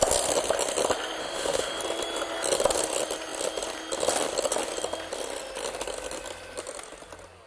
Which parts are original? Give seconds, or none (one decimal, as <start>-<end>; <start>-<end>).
0.0-1.2; 1.8-7.5